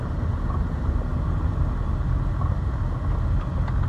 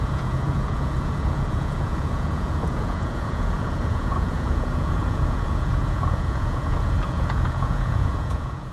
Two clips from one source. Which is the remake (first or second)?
second